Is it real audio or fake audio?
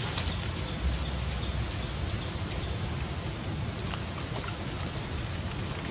real